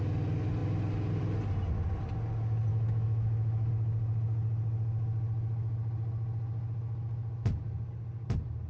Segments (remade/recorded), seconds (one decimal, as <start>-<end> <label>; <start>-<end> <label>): 0.0-2.7 recorded; 2.7-3.7 remade; 3.7-8.7 recorded